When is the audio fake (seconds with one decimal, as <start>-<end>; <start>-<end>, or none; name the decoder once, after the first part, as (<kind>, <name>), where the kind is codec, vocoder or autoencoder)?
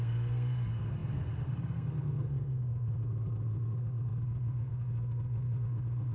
0.0-6.1 (codec, SNAC)